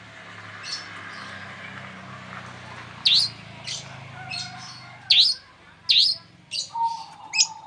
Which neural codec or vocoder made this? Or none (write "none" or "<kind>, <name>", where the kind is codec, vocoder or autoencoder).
none